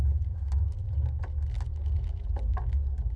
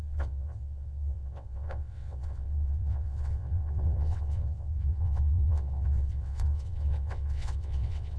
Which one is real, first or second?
first